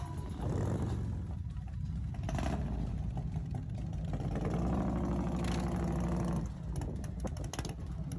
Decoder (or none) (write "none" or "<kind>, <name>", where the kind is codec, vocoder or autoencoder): none